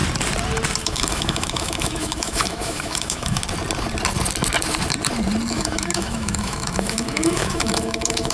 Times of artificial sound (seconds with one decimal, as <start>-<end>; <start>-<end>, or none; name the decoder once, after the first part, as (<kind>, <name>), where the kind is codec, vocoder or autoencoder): 0.8-3.4 (autoencoder, DAC-VAE); 5.5-8.3